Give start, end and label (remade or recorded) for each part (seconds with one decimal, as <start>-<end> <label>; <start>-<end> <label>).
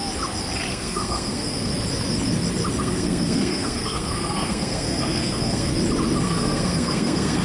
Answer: 0.0-0.7 recorded; 0.7-1.7 remade; 1.7-2.8 recorded; 2.8-5.7 remade; 5.7-6.2 recorded; 6.2-7.4 remade